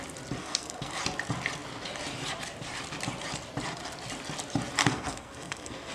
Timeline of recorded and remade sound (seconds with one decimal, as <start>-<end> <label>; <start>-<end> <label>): 0.0-0.4 recorded; 0.4-1.0 remade; 1.0-4.8 recorded; 4.8-5.9 remade